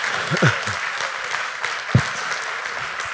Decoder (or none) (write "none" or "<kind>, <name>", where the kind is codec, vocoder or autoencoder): none